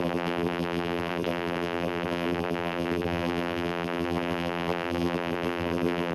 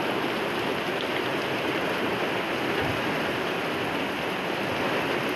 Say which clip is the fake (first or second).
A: first